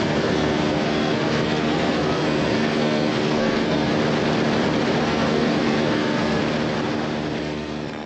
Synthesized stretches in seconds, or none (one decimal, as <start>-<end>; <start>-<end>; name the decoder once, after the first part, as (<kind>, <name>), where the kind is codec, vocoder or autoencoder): 0.0-3.9 (codec, SNAC); 5.0-6.4; 7.4-8.1